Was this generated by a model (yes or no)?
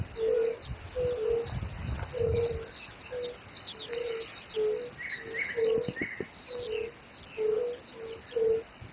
no